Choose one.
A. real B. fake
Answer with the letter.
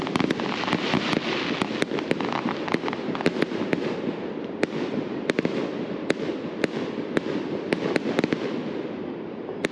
A